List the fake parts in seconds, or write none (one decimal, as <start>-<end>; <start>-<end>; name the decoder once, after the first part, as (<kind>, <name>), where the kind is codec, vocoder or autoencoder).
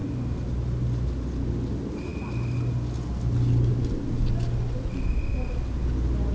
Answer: none